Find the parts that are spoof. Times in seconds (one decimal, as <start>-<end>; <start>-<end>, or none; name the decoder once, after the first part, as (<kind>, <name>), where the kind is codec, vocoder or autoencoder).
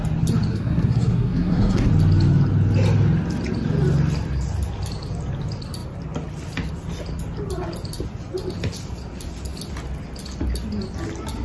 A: 0.5-1.9 (codec, SNAC)